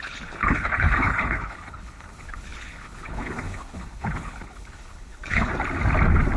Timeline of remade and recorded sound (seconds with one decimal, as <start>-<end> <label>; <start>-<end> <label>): 0.0-5.5 remade; 5.5-6.4 recorded